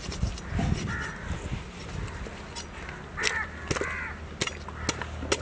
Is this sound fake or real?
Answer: real